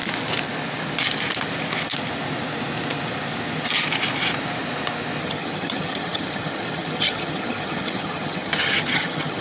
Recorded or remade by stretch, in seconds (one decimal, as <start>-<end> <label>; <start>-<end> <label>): 0.0-5.2 recorded; 5.2-9.4 remade